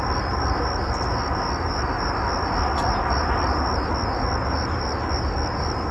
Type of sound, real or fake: real